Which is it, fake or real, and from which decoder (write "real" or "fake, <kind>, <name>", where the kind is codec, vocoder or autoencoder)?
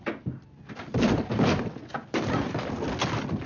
real